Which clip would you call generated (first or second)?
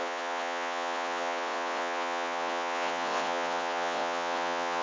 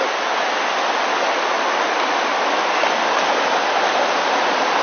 first